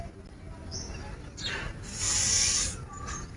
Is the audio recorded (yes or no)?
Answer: yes